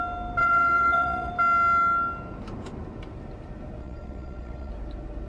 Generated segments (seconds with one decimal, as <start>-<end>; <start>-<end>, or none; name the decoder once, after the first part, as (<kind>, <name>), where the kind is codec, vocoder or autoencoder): 0.4-1.3 (vocoder, WaveNeXt); 3.8-4.7